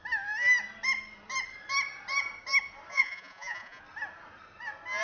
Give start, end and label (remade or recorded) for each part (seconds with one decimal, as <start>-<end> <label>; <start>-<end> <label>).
0.0-2.9 recorded; 2.9-3.8 remade; 3.8-5.0 recorded